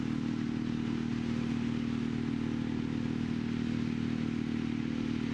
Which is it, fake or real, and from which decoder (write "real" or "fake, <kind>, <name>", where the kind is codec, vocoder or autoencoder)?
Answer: real